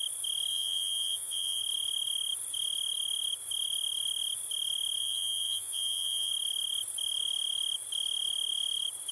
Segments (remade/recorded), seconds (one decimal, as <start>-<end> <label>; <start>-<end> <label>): 0.0-0.5 recorded; 0.5-1.6 remade; 1.6-5.0 recorded; 5.0-6.3 remade; 6.3-9.1 recorded